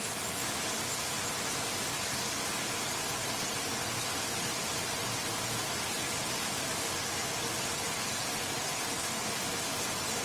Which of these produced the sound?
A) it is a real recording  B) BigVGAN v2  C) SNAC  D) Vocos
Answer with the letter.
A